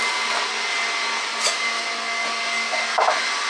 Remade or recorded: recorded